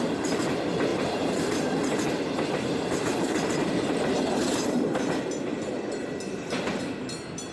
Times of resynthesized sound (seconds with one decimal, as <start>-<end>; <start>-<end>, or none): 0.0-5.5; 6.8-7.5